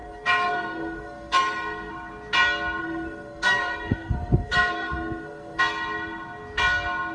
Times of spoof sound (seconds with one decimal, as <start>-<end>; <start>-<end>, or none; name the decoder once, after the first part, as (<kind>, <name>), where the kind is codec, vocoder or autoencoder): 0.0-1.9 (codec, SNAC); 2.8-5.6